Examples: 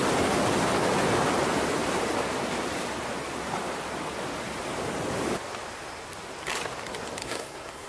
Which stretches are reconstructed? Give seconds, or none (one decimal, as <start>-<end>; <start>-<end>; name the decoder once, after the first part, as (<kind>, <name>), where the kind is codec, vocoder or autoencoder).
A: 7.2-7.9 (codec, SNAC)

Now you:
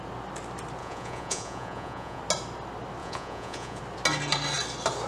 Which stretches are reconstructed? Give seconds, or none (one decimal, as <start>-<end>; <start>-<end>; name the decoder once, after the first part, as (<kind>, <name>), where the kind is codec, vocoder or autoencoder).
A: 0.8-2.2 (vocoder, Vocos); 3.0-3.8

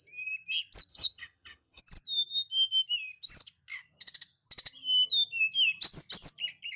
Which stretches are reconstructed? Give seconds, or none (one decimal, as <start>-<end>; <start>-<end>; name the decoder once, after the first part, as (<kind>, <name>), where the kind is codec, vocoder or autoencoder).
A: 0.9-1.8 (vocoder, HiFi-GAN)